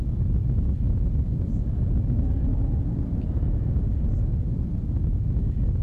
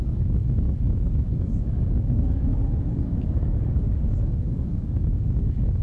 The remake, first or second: second